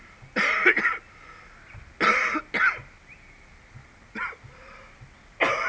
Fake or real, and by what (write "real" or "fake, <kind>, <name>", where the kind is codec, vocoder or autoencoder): real